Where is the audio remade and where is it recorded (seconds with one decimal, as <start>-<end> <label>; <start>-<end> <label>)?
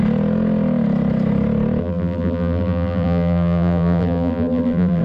0.0-1.8 recorded; 1.8-5.0 remade